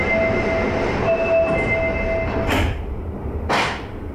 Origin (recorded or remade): recorded